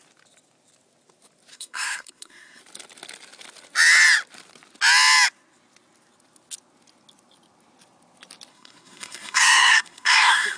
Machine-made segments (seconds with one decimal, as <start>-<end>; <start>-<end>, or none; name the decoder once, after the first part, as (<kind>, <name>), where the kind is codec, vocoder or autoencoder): 1.5-2.6 (codec, SNAC); 8.5-10.6